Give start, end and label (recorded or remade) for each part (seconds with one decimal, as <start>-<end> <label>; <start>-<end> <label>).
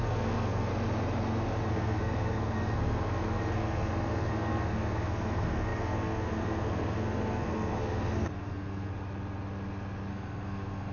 0.0-0.7 remade; 0.7-1.7 recorded; 1.7-8.9 remade; 8.9-10.1 recorded; 10.1-10.9 remade